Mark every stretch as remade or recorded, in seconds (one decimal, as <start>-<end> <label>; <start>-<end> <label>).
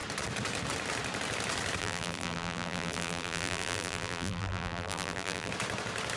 0.0-1.8 recorded; 1.8-5.5 remade; 5.5-6.2 recorded